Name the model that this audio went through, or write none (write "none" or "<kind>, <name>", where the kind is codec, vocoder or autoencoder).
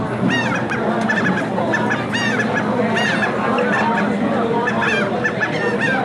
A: none